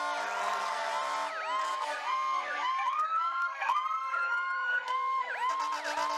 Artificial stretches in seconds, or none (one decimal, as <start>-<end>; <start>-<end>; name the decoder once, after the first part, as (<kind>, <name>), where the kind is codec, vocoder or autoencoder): 0.4-0.9 (codec, SNAC); 1.6-5.3